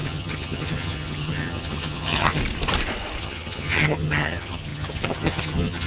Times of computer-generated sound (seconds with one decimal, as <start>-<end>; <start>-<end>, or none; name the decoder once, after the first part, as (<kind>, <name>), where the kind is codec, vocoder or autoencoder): 0.0-2.4 (vocoder, HiFi-GAN); 3.2-5.9